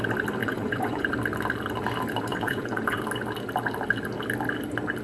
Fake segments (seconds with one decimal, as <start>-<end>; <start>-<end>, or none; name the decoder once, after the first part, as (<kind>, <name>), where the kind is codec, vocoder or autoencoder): 0.4-1.1 (vocoder, Vocos); 2.3-3.0